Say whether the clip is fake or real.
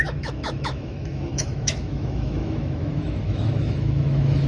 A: fake